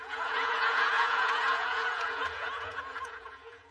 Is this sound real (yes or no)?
no